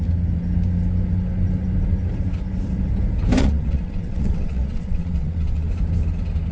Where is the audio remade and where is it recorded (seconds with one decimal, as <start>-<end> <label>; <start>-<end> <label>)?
0.0-3.4 recorded; 3.4-5.7 remade; 5.7-6.5 recorded